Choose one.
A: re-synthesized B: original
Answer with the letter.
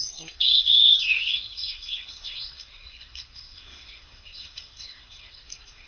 A